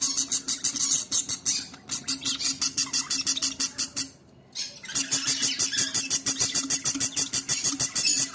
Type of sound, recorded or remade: recorded